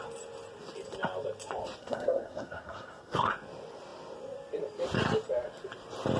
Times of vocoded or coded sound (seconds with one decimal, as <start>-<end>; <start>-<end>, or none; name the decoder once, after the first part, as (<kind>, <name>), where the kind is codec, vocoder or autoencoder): 1.8-3.3 (codec, SNAC)